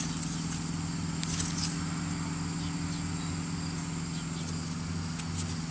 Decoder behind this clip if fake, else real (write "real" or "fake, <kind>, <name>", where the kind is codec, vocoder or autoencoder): real